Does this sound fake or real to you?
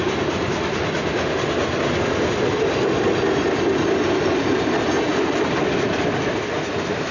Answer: real